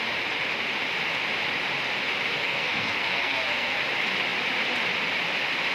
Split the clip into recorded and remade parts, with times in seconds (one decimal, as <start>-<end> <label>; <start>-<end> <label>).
0.0-2.3 recorded; 2.3-3.8 remade; 3.8-5.7 recorded